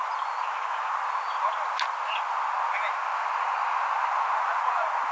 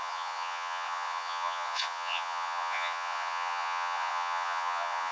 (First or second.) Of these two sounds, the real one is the first